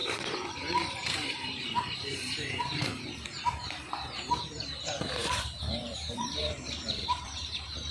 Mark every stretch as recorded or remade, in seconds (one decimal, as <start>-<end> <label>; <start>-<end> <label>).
0.0-2.9 remade; 2.9-4.4 recorded; 4.4-7.9 remade